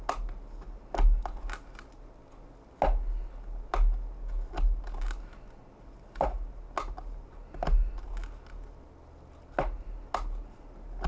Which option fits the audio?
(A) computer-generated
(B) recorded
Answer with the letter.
B